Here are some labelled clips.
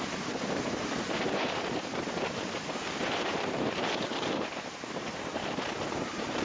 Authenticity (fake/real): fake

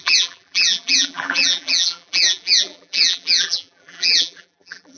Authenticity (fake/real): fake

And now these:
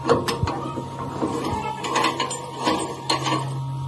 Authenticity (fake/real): real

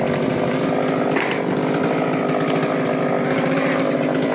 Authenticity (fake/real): fake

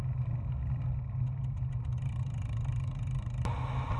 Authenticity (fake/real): real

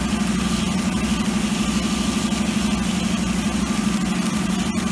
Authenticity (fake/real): real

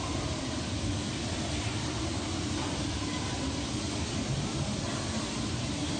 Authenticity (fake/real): real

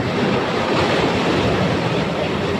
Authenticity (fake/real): fake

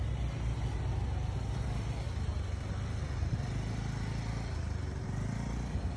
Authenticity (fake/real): real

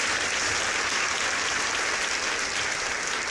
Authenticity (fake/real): real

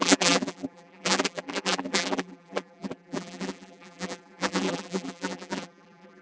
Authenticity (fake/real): fake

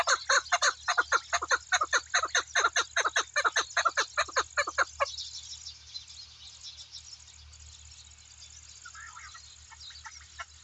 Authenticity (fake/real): real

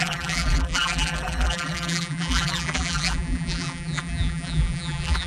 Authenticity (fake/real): fake